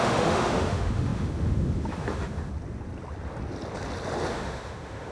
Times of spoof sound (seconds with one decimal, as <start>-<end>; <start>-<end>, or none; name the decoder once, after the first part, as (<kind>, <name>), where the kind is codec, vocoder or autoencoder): 0.0-2.5 (autoencoder, DAC-VAE); 4.3-5.1